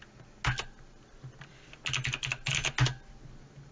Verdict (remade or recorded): recorded